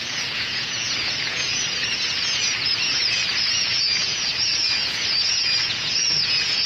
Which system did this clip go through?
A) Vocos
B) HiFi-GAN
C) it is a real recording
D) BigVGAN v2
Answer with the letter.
A